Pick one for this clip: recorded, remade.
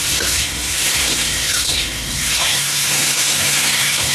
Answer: remade